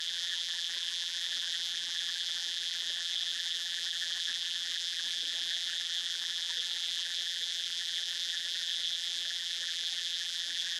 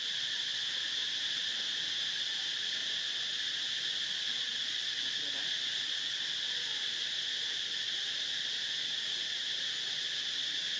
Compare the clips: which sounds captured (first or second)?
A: second